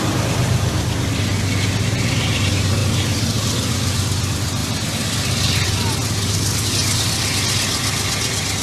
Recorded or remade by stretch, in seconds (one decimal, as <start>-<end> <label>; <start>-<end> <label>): 0.0-8.6 recorded